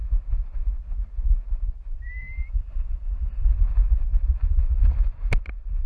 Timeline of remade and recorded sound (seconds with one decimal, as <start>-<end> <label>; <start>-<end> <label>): 0.0-2.1 recorded; 2.1-3.5 remade; 3.5-5.9 recorded